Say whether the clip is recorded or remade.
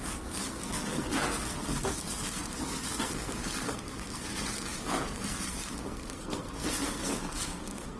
remade